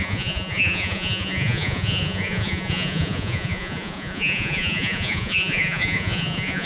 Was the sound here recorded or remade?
remade